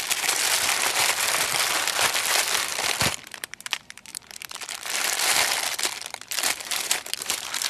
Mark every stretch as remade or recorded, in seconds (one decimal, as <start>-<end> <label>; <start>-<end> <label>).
0.0-7.7 remade